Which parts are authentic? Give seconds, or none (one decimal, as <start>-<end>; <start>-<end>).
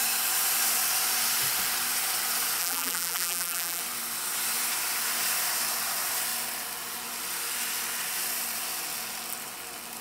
0.0-2.6; 3.8-10.0